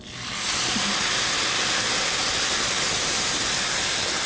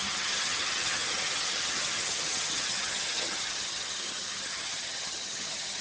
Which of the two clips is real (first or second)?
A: first